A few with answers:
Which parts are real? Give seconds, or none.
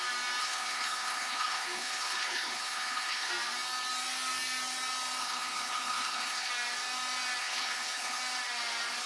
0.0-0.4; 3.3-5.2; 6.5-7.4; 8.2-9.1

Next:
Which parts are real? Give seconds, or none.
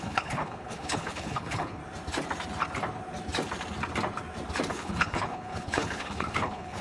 1.8-4.7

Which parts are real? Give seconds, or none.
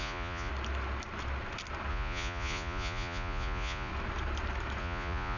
0.5-1.9; 3.9-4.8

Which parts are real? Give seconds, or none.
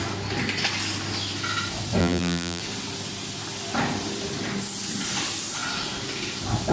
0.0-2.0; 2.6-6.7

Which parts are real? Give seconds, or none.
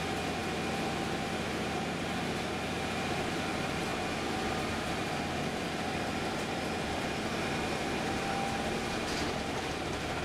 0.0-10.2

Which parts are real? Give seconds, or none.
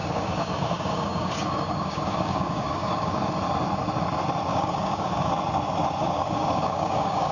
3.3-4.5; 5.3-6.0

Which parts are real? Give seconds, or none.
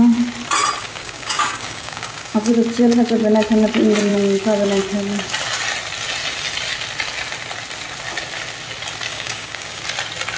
0.0-0.8; 2.5-9.1; 9.8-10.4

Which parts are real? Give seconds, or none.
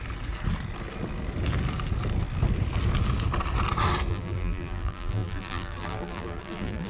0.0-4.1